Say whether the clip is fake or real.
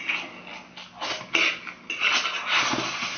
real